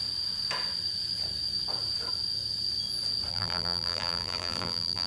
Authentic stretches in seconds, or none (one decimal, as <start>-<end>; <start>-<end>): 0.0-3.3